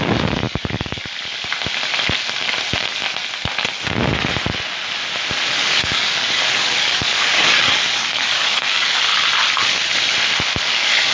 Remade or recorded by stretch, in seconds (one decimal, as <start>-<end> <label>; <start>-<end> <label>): 0.0-1.0 remade; 1.0-5.5 recorded; 5.5-9.1 remade; 9.1-10.7 recorded; 10.7-11.1 remade